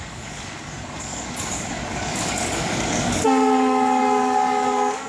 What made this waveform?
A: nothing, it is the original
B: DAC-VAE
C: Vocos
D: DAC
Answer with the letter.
D